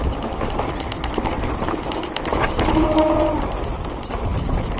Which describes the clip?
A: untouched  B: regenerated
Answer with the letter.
A